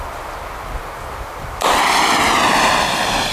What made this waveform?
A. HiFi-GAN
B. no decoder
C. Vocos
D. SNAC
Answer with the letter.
B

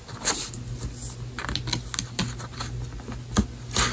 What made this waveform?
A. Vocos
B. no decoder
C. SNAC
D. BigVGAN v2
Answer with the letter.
B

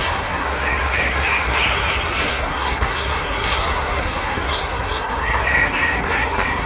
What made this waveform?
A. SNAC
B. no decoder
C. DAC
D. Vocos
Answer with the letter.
A